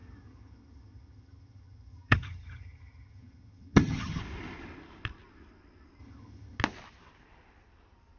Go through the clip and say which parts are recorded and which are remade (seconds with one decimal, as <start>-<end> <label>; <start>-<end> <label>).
0.0-4.2 remade; 4.2-6.0 recorded; 6.0-6.6 remade; 6.6-8.2 recorded